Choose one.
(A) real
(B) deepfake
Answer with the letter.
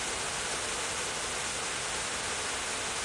A